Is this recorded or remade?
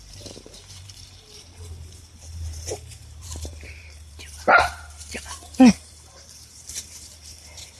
remade